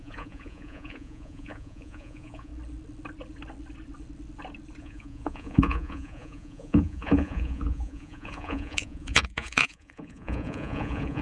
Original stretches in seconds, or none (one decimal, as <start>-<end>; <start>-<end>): 2.5-4.8